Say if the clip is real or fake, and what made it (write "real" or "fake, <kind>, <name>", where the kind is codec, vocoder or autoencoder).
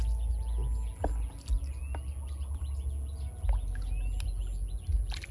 real